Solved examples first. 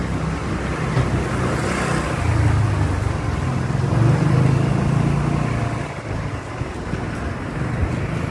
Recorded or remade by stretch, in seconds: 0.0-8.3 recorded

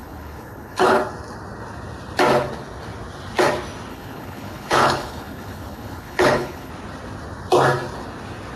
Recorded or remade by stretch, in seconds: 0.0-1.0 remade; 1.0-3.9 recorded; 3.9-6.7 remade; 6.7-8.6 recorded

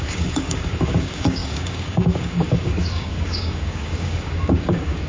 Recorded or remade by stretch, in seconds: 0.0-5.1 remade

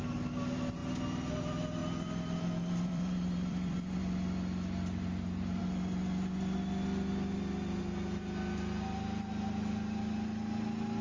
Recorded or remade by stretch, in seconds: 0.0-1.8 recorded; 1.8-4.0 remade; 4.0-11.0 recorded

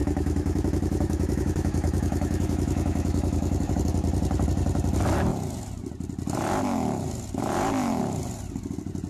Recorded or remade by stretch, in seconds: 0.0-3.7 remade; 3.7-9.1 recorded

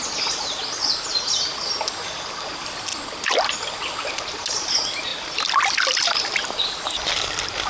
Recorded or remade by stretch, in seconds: 0.0-7.7 recorded

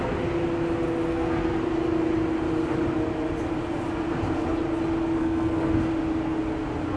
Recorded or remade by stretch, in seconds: 0.0-1.1 recorded; 1.1-1.6 remade; 1.6-5.2 recorded; 5.2-5.9 remade; 5.9-7.0 recorded

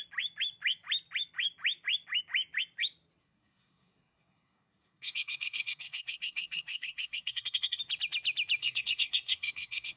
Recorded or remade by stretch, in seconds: 0.0-3.2 recorded; 3.2-7.8 remade; 7.8-8.6 recorded; 8.6-10.0 remade